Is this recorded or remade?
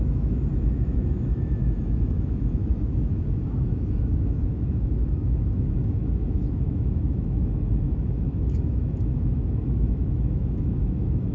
remade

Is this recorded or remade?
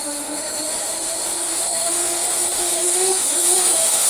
remade